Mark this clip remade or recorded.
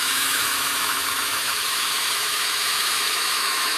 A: remade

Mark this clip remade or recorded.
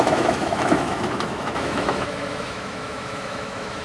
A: remade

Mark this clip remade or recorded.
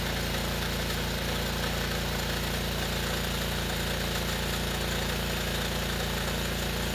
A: recorded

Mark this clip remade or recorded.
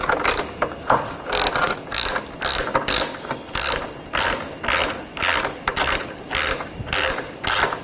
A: recorded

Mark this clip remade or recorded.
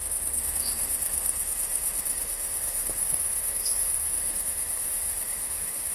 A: remade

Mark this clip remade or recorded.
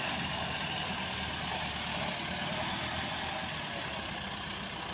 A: recorded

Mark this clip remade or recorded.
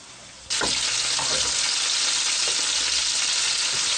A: recorded